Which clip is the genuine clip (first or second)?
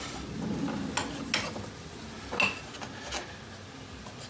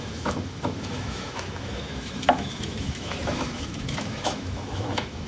first